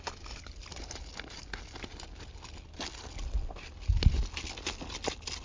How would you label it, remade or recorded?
recorded